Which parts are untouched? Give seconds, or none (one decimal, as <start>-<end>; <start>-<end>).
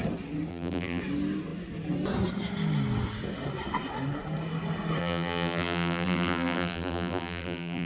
0.0-0.5; 1.0-5.0